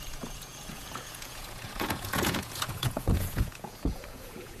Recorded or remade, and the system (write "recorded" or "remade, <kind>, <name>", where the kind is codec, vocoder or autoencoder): remade, vocoder, Vocos